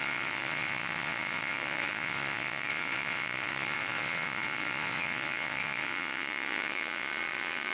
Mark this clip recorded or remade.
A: remade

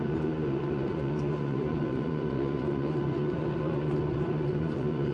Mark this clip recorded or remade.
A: remade